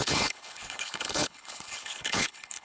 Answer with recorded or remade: remade